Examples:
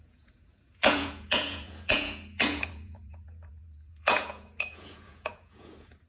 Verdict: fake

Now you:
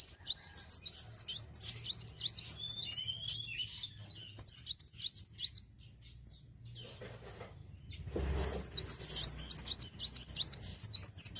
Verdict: real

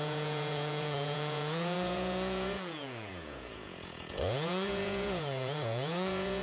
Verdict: fake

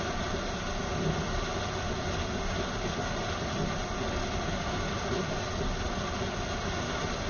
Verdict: real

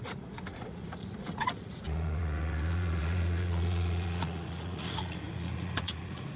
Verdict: fake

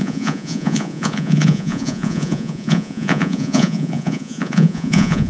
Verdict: fake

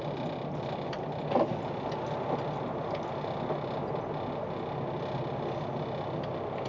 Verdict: real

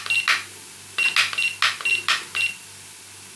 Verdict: real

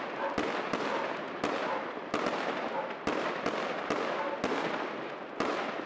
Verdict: real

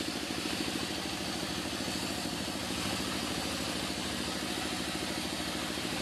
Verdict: real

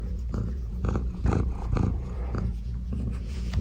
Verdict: fake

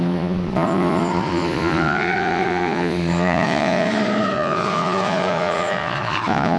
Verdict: fake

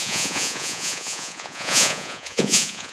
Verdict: fake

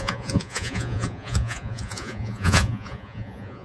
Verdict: fake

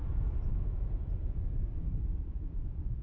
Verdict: fake